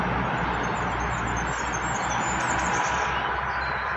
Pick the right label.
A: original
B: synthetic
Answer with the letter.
A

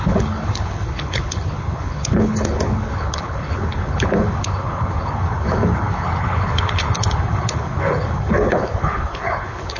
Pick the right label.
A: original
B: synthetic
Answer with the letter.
B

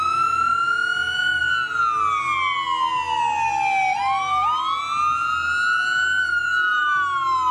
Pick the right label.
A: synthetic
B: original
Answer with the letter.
B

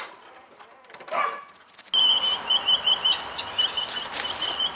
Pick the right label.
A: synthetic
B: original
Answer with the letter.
B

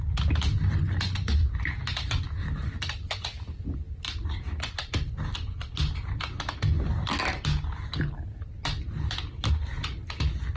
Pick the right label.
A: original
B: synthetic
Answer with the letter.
A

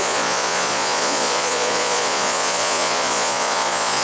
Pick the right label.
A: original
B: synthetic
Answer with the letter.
B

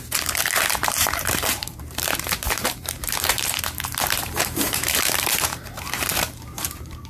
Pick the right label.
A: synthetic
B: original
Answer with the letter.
A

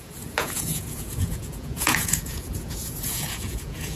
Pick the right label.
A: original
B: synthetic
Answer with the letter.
B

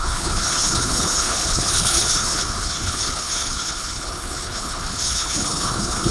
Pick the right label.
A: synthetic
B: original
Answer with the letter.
A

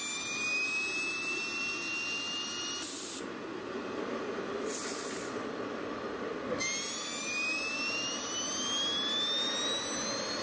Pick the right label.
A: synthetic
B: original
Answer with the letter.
B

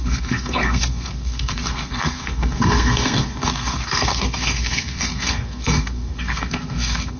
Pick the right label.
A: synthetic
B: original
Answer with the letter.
A